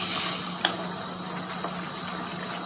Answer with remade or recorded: recorded